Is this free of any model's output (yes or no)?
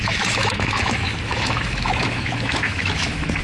no